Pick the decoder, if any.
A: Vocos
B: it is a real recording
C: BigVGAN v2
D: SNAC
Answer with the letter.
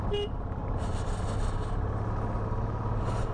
B